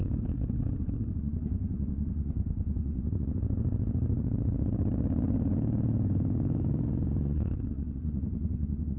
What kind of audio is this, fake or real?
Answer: fake